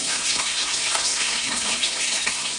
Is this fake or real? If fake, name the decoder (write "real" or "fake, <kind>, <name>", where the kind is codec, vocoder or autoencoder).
fake, codec, SNAC